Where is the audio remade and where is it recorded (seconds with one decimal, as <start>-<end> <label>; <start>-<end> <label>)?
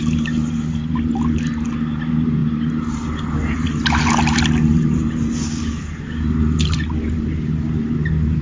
0.0-8.4 recorded